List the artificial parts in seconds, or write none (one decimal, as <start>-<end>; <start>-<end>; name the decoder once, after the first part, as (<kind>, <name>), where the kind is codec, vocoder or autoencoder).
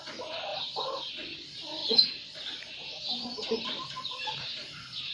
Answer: 0.5-1.1 (vocoder, BigVGAN v2); 1.8-5.1